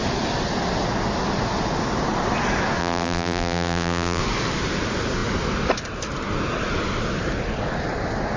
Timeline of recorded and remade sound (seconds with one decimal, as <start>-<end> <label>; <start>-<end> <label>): 0.0-2.8 recorded; 2.8-4.2 remade; 4.2-8.4 recorded